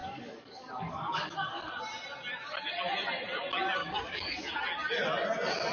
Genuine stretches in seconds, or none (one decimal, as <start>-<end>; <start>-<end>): 1.7-3.8; 4.5-5.7